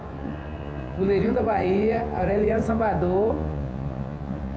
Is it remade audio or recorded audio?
remade